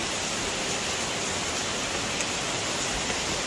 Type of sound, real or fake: real